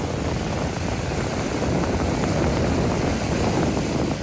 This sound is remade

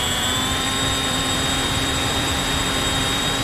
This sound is remade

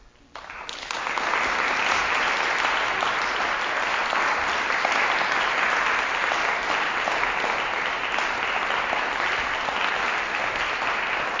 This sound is recorded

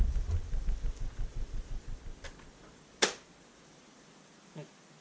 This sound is recorded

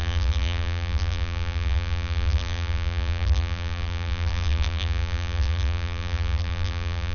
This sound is remade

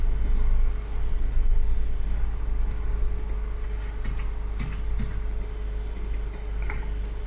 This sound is recorded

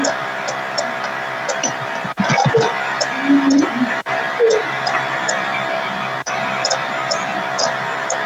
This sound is recorded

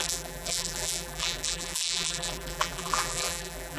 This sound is remade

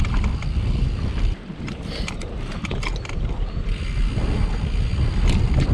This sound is remade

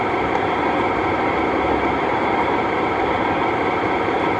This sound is remade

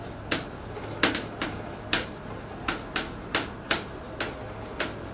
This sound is recorded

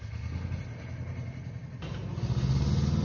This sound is recorded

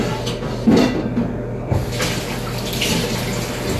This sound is recorded